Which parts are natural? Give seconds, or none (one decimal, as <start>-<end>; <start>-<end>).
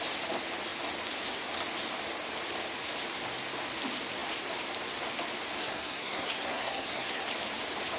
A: 0.0-5.6; 7.2-8.0